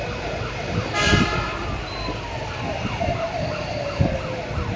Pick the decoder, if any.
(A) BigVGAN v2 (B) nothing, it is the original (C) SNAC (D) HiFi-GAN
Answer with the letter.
A